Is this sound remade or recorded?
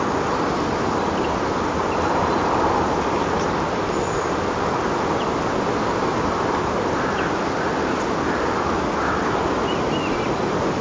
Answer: recorded